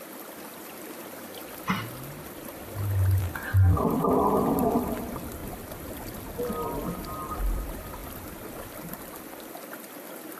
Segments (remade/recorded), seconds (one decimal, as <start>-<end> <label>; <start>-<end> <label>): 0.0-1.4 remade; 1.4-4.4 recorded; 4.4-5.4 remade; 5.4-7.1 recorded; 7.1-10.4 remade